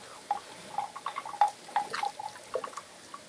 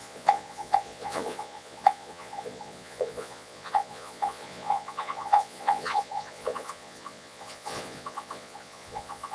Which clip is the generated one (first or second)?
second